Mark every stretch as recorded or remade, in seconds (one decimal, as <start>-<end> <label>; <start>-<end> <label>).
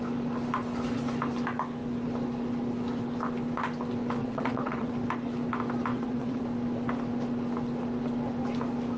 0.0-4.2 recorded; 4.2-4.9 remade; 4.9-5.9 recorded; 5.9-6.4 remade; 6.4-9.0 recorded